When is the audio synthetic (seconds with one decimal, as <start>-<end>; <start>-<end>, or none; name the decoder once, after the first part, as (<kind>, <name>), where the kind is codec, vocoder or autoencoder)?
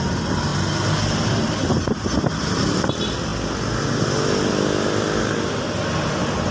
none